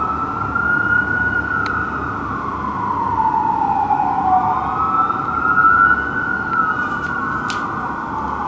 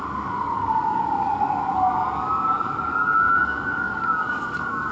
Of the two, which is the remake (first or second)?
second